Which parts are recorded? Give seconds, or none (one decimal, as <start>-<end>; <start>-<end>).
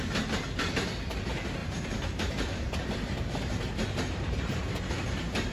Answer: 0.0-1.6; 4.9-5.5